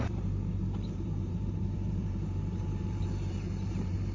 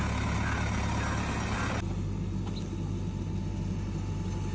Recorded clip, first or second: second